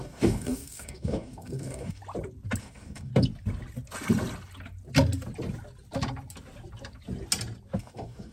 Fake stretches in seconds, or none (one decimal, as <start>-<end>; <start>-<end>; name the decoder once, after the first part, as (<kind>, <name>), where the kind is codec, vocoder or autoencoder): 0.0-2.0 (codec, DAC); 2.6-3.1; 7.8-8.3